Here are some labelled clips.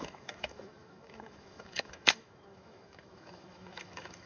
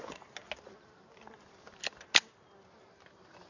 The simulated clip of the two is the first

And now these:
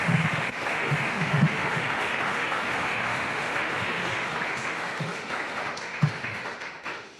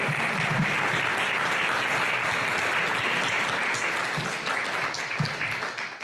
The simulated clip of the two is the first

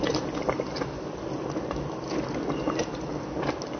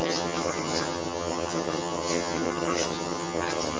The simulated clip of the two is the second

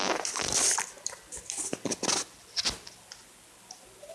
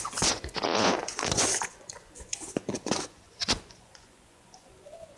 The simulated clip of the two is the second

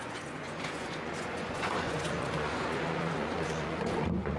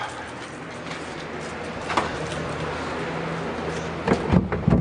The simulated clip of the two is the first